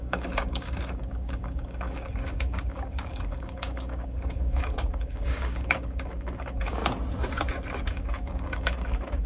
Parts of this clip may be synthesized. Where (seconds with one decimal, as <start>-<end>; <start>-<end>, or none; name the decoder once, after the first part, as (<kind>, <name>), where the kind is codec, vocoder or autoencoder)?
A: 0.0-6.8 (codec, DAC); 7.8-9.3